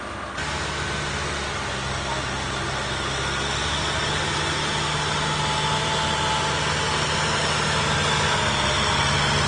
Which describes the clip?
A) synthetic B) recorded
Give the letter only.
B